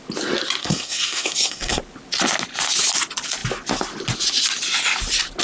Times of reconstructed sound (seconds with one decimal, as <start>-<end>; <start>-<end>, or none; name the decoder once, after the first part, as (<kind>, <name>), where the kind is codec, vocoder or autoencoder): 0.6-1.8 (codec, SNAC)